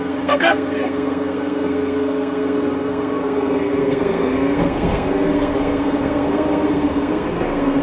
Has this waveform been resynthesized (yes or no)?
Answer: yes